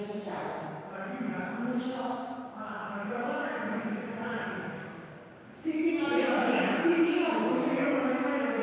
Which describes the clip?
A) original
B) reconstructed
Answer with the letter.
B